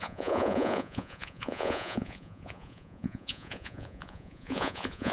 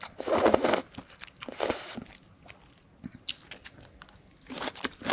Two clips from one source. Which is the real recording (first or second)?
second